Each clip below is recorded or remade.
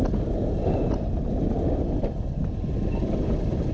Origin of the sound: recorded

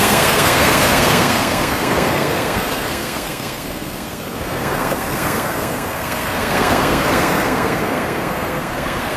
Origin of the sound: remade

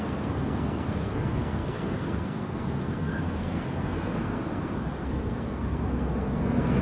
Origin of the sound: remade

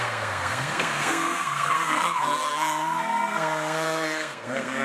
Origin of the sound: remade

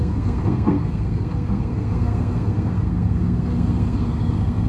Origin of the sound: remade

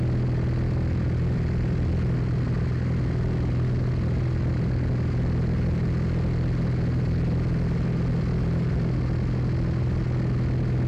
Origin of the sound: recorded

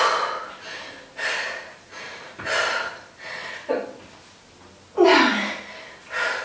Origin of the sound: recorded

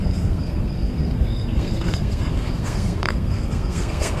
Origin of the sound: remade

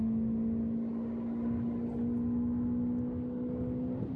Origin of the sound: recorded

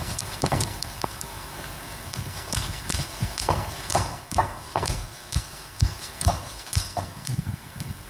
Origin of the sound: remade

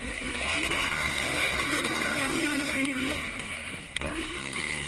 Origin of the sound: remade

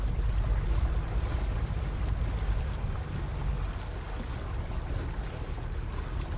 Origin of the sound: recorded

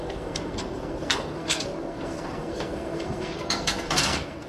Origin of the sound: remade